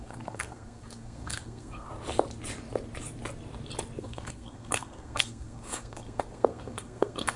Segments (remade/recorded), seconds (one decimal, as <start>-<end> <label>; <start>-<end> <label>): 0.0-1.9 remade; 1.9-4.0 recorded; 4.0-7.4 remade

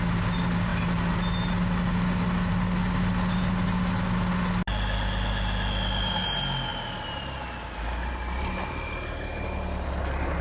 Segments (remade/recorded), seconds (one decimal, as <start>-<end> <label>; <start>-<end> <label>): 0.0-10.4 recorded

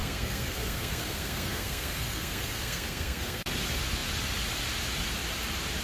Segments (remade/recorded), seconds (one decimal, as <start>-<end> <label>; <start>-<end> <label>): 0.0-3.5 remade; 3.5-5.8 recorded